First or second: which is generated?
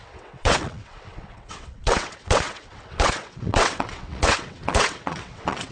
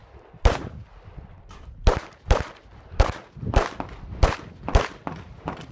first